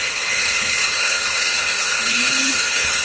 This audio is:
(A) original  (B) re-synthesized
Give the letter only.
B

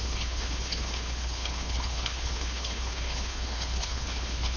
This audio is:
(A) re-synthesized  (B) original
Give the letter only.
A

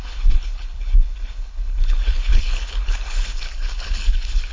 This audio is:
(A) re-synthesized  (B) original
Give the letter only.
A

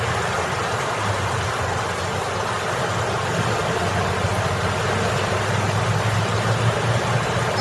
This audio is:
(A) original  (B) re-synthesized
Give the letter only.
A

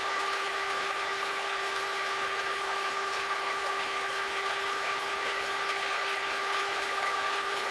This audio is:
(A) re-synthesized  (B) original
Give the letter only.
A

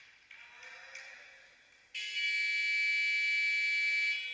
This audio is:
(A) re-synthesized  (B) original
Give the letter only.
B